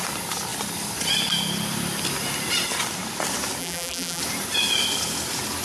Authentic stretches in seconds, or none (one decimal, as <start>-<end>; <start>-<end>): 0.0-3.6; 4.2-5.6